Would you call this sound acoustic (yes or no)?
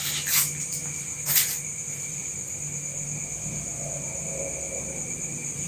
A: yes